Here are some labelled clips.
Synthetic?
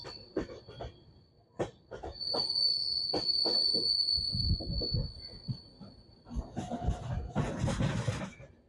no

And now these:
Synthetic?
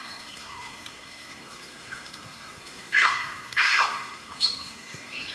yes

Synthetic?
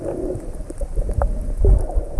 no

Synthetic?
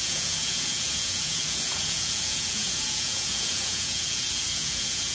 yes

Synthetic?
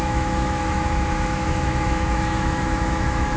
yes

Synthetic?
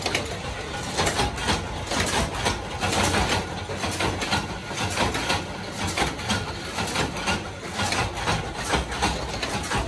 no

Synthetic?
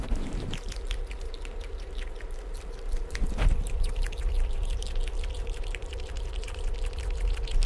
yes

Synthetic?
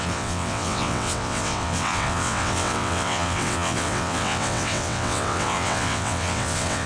yes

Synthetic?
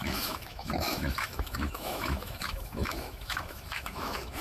yes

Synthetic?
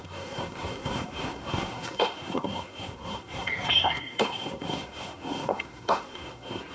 yes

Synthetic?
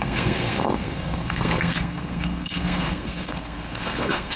yes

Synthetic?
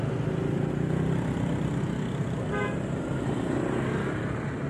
no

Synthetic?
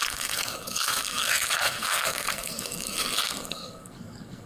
yes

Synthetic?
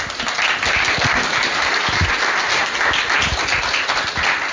no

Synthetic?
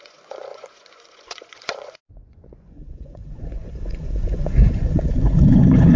yes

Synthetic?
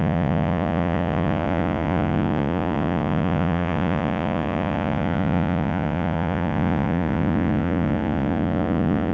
yes